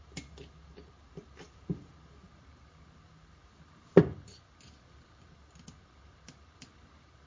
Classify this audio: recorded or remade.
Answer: recorded